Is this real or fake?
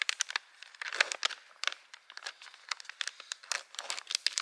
real